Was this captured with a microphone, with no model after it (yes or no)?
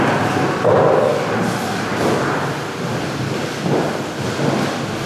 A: yes